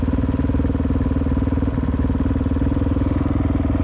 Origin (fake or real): real